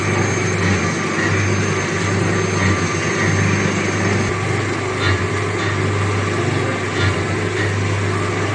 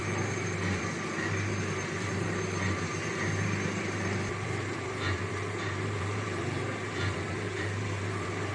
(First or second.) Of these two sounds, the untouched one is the first